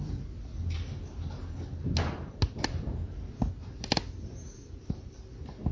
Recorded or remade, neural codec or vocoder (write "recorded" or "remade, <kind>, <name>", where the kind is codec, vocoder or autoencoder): recorded